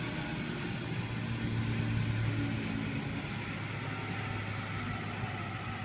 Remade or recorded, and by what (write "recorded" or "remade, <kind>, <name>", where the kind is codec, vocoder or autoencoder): recorded